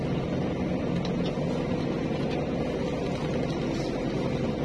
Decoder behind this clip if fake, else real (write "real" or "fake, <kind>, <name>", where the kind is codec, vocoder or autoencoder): real